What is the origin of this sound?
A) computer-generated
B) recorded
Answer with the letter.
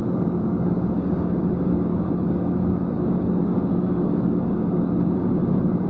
A